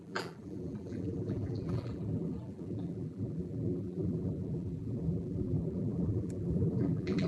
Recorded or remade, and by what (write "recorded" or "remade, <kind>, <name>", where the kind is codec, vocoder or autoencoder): remade, vocoder, BigVGAN v2